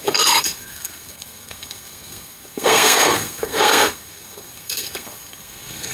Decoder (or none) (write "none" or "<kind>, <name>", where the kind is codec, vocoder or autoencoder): codec, SNAC